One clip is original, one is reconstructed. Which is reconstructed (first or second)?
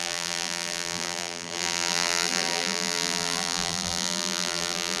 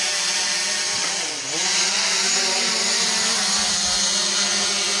first